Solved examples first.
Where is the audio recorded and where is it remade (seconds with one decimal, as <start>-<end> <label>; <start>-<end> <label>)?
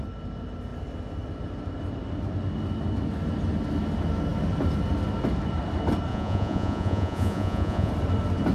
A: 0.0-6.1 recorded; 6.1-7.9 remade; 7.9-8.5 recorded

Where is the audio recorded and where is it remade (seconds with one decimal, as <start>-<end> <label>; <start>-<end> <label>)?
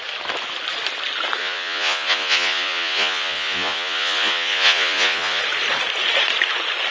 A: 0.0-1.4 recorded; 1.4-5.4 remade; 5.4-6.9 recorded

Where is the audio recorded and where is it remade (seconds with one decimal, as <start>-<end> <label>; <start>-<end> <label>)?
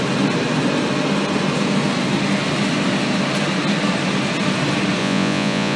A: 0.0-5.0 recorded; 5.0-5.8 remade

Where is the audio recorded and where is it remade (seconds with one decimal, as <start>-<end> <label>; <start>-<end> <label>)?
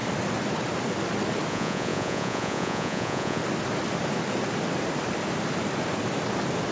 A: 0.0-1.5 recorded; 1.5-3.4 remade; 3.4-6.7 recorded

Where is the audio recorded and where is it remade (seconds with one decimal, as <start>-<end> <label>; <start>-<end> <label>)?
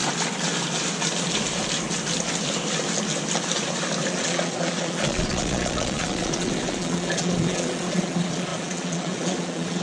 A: 0.0-4.1 recorded; 4.1-9.8 remade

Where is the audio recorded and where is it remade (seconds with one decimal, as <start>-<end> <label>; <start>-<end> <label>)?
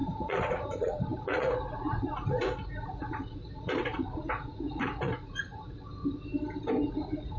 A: 0.0-5.8 remade; 5.8-6.9 recorded; 6.9-7.4 remade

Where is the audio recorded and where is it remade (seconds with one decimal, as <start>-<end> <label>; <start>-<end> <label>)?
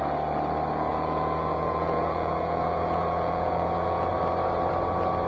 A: 0.0-0.9 recorded; 0.9-4.1 remade; 4.1-5.3 recorded